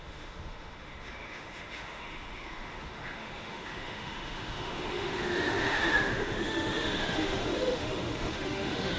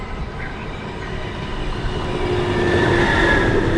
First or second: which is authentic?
second